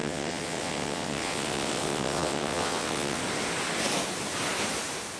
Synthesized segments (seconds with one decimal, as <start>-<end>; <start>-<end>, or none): 0.0-3.2